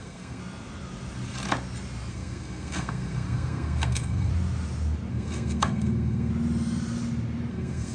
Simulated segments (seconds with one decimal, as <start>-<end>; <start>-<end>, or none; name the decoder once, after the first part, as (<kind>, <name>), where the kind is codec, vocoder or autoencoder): 0.0-0.4 (codec, SNAC); 2.1-4.3; 5.1-6.3; 7.5-7.9